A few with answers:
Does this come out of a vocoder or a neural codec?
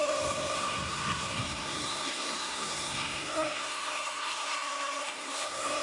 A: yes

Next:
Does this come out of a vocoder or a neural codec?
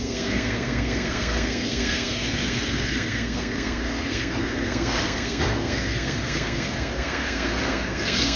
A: yes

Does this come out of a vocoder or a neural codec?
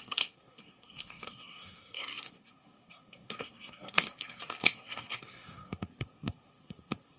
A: yes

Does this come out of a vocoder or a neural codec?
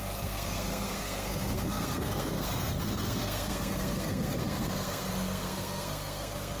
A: yes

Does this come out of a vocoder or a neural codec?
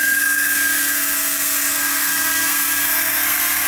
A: yes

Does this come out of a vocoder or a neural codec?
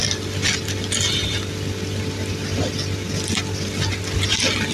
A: no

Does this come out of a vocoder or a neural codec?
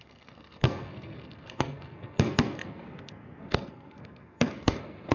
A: yes